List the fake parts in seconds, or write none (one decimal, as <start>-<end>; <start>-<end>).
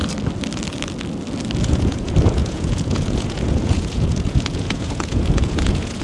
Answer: 1.6-6.0